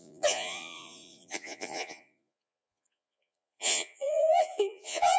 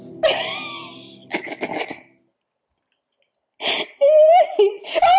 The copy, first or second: first